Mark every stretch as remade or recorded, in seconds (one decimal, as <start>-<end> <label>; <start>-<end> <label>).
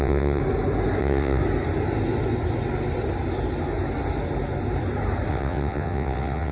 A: 0.0-0.4 remade; 0.4-1.0 recorded; 1.0-1.4 remade; 1.4-5.3 recorded; 5.3-6.5 remade